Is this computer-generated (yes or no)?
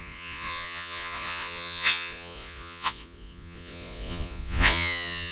yes